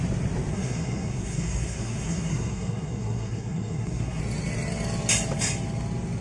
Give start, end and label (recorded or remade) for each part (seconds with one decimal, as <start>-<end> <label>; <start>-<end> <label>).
0.0-0.5 recorded; 0.5-4.2 remade; 4.2-6.2 recorded